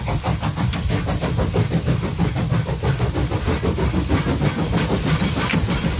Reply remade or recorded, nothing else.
recorded